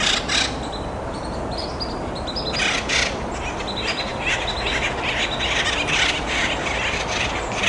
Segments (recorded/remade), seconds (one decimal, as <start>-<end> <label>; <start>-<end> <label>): 0.0-7.7 recorded